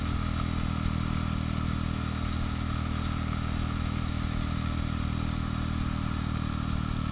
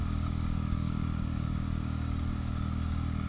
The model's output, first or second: second